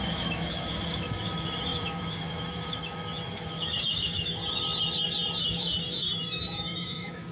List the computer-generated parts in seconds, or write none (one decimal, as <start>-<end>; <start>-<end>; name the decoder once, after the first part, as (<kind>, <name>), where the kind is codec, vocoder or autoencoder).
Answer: 0.0-4.4 (autoencoder, DAC-VAE); 5.4-7.3